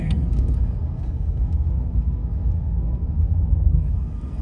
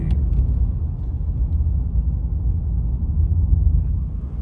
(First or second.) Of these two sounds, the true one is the second